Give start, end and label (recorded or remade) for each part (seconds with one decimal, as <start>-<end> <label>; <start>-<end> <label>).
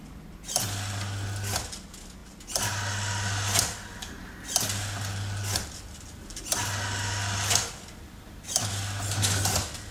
0.0-9.9 recorded